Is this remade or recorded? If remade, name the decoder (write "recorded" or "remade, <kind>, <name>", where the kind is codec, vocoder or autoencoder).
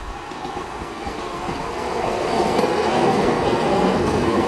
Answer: remade, codec, SNAC